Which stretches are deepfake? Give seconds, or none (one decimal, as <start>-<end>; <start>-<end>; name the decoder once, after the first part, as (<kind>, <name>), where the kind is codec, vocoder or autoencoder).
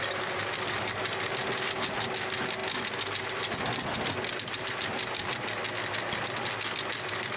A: none